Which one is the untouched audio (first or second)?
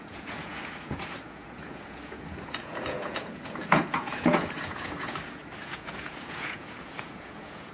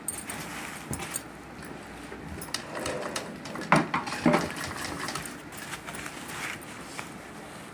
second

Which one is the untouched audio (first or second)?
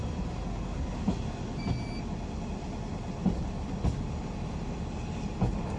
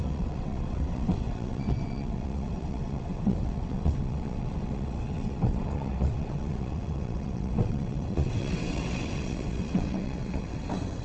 first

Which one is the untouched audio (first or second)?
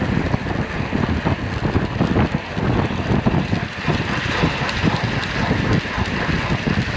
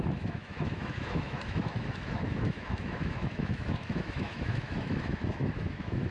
first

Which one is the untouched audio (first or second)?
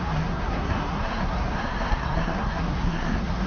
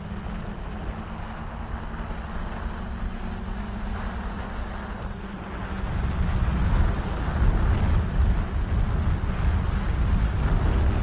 second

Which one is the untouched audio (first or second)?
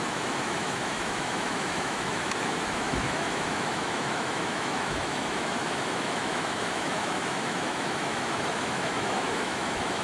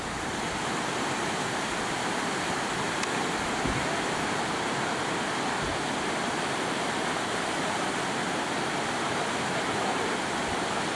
second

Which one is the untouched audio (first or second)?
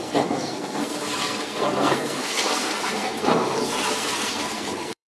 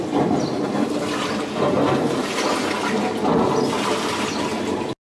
second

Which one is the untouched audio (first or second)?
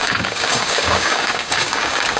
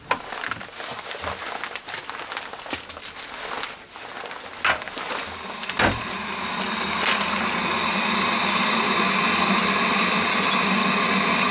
second